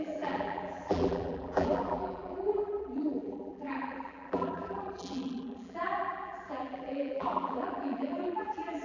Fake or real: fake